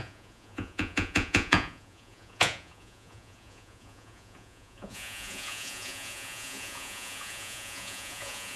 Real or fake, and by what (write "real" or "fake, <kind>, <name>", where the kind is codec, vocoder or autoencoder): fake, vocoder, Vocos